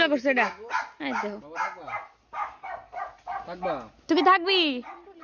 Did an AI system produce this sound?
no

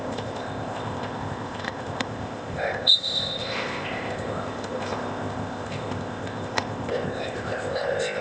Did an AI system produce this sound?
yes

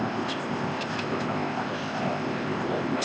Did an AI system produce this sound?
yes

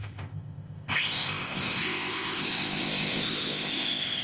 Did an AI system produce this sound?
yes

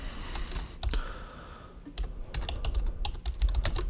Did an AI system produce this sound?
no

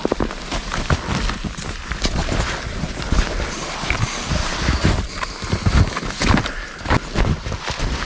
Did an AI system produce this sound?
no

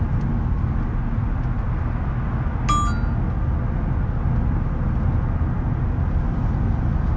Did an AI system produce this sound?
no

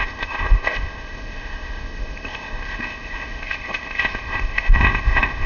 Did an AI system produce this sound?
yes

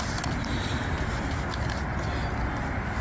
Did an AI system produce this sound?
no